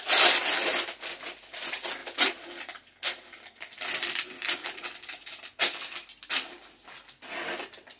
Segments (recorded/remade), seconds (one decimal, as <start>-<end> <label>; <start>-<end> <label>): 0.0-8.0 recorded